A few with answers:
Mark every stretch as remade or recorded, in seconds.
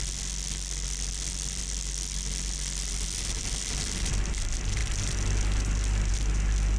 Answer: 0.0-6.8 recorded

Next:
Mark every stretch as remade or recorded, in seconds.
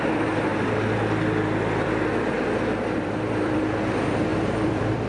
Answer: 0.0-0.5 recorded; 0.5-3.6 remade; 3.6-4.3 recorded; 4.3-5.1 remade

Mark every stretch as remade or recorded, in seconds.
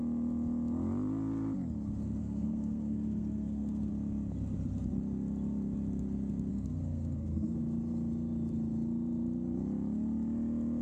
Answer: 0.0-2.2 recorded; 2.2-3.9 remade; 3.9-6.5 recorded; 6.5-7.6 remade; 7.6-10.8 recorded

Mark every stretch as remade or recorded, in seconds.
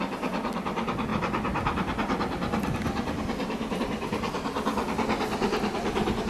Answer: 0.0-6.3 recorded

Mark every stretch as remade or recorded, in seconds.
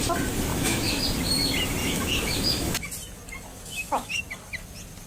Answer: 0.0-0.5 recorded; 0.5-1.0 remade; 1.0-1.8 recorded; 1.8-2.7 remade; 2.7-3.5 recorded; 3.5-4.2 remade; 4.2-5.1 recorded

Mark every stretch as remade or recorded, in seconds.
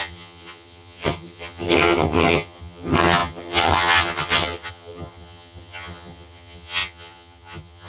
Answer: 0.0-7.9 remade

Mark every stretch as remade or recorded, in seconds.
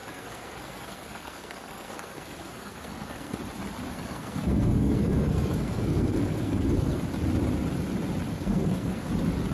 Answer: 0.0-3.4 remade; 3.4-3.9 recorded; 3.9-7.0 remade; 7.0-8.3 recorded; 8.3-9.1 remade; 9.1-9.5 recorded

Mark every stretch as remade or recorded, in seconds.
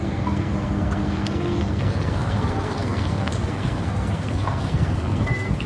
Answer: 0.0-5.7 remade